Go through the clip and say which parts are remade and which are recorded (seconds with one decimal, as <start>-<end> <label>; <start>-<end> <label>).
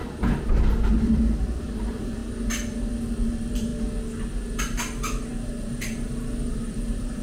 0.0-1.3 recorded; 1.3-2.2 remade; 2.2-3.3 recorded; 3.3-3.7 remade; 3.7-5.3 recorded; 5.3-7.2 remade